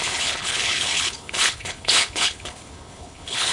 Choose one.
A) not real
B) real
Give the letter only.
A